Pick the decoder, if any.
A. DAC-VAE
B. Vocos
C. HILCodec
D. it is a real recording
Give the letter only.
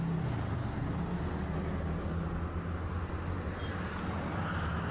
D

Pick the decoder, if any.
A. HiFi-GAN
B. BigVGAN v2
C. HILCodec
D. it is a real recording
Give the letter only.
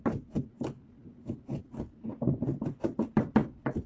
D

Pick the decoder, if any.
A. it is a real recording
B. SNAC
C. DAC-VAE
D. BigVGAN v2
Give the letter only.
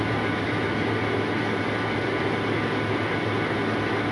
A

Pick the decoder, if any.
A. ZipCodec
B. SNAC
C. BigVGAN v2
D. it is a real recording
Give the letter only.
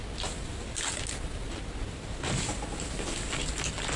D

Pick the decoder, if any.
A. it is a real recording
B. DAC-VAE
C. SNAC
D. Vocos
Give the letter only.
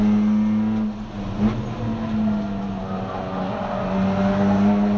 A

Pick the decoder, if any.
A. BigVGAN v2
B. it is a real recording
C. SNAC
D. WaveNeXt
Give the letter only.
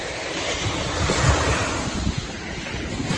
B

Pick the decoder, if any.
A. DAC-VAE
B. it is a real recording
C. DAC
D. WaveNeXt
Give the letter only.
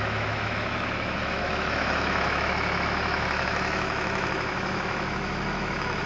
A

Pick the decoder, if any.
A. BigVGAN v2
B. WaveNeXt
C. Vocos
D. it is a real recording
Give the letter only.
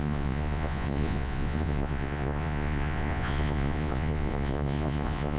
C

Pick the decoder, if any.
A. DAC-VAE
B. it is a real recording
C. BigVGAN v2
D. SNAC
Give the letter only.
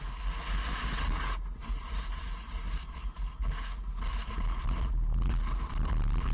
B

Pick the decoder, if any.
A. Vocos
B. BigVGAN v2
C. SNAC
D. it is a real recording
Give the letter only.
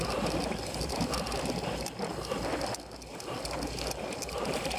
D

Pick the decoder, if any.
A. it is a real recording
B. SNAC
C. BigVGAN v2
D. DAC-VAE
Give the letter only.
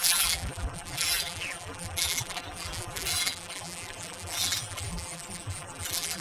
C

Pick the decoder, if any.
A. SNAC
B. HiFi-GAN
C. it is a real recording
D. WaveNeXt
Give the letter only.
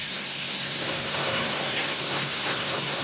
A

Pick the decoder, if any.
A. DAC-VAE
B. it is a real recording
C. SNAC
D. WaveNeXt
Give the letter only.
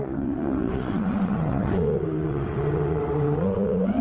D